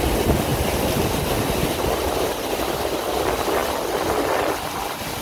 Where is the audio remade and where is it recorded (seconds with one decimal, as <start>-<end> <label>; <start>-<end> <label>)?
0.0-5.2 recorded